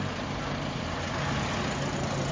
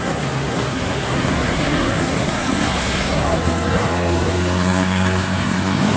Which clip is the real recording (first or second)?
first